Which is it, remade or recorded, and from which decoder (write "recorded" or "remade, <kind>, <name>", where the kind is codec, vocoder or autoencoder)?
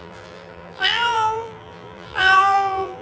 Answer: remade, vocoder, BigVGAN v2